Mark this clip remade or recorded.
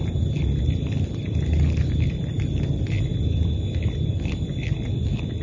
remade